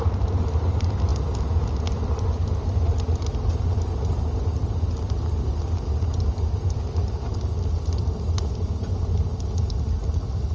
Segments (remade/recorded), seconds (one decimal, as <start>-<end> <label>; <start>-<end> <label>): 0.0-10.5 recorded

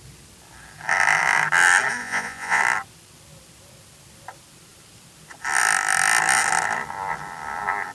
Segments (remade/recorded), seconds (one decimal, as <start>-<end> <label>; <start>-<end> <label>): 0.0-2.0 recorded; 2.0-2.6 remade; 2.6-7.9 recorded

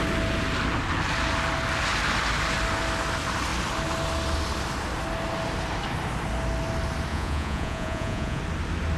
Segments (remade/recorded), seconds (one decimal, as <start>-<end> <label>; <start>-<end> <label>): 0.0-7.1 recorded; 7.1-8.4 remade; 8.4-9.0 recorded

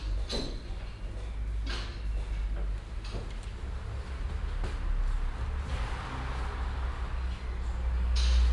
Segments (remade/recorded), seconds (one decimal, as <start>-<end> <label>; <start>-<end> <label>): 0.0-0.9 remade; 0.9-8.5 recorded

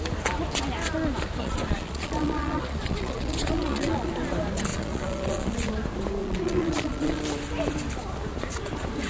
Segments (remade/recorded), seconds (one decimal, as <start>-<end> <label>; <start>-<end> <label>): 0.0-1.4 recorded; 1.4-4.1 remade; 4.1-4.7 recorded; 4.7-5.7 remade; 5.7-6.2 recorded; 6.2-7.2 remade; 7.2-9.1 recorded

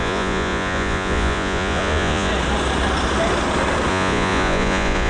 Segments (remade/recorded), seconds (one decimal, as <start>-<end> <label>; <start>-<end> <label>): 0.0-2.3 remade; 2.3-3.9 recorded; 3.9-5.1 remade